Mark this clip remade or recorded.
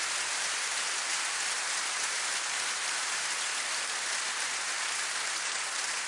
remade